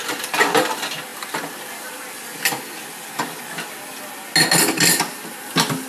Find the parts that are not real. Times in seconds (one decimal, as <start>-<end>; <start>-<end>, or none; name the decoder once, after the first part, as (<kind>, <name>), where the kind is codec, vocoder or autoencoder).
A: none